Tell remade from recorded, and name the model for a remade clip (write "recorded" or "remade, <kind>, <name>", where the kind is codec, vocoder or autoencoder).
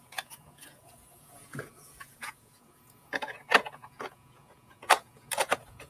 remade, vocoder, Vocos